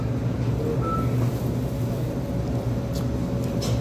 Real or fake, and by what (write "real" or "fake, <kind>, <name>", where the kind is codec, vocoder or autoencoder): real